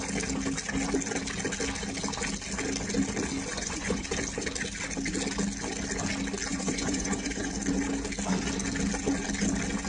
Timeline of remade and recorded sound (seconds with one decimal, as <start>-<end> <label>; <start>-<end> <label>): 0.0-3.5 recorded; 3.5-4.0 remade; 4.0-6.5 recorded; 6.5-7.5 remade; 7.5-9.9 recorded